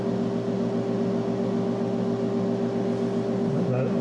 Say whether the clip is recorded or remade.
recorded